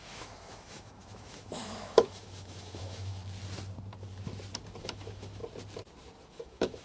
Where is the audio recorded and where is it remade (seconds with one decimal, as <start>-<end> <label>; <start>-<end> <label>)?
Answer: 0.0-3.2 remade; 3.2-4.8 recorded; 4.8-5.4 remade; 5.4-6.3 recorded; 6.3-6.8 remade